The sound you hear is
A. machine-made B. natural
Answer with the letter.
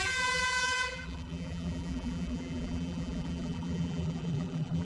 A